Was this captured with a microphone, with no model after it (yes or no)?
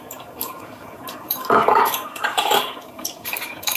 no